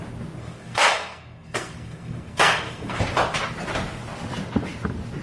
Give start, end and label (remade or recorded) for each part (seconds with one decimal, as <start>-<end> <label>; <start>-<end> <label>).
0.0-0.4 recorded; 0.4-3.0 remade; 3.0-5.2 recorded